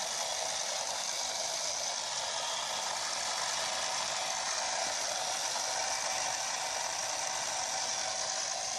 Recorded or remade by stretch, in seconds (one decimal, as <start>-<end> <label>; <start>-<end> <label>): 0.0-8.8 recorded